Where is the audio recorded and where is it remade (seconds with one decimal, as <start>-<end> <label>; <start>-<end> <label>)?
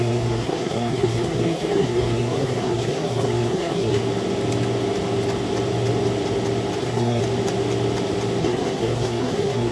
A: 0.0-4.0 remade; 4.0-6.8 recorded; 6.8-7.2 remade; 7.2-8.4 recorded; 8.4-9.7 remade